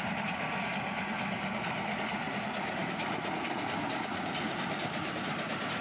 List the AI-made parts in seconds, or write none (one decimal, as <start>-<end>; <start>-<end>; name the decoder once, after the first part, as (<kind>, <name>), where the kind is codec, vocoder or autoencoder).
none